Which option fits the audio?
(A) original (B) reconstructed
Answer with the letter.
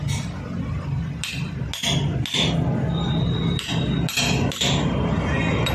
A